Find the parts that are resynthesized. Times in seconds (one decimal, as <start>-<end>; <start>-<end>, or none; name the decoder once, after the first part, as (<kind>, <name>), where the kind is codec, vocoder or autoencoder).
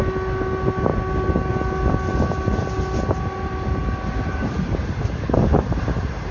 none